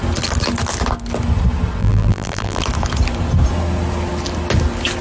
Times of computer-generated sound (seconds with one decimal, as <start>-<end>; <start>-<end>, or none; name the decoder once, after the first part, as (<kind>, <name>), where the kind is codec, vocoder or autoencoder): 1.8-2.6 (vocoder, BigVGAN v2)